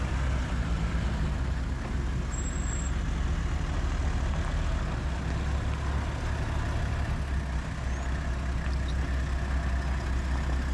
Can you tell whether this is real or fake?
real